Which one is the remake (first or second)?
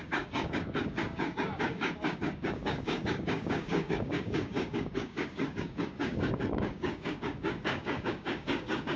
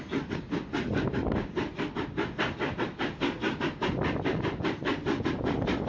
first